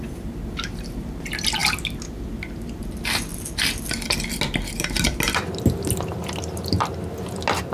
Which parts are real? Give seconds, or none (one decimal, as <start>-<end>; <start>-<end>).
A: 0.0-7.7

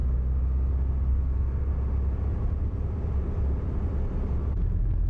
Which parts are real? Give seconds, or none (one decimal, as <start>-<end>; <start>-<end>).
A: 0.0-1.1; 1.7-5.1

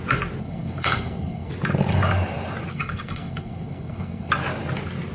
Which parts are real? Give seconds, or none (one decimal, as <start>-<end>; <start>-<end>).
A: 0.0-0.4; 1.5-2.7; 4.3-5.1

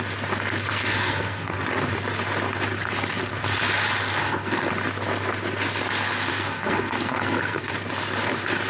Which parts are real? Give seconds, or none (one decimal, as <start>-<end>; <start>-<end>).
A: 0.0-0.7; 1.6-4.2; 4.7-6.3; 7.7-8.7

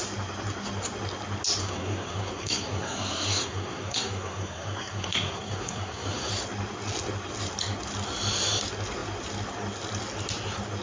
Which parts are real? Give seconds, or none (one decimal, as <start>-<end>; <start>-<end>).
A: 0.0-1.6; 6.3-10.8